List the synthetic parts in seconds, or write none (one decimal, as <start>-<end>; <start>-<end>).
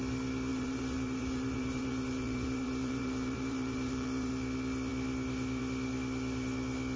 0.5-4.3